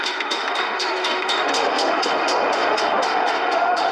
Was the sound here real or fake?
fake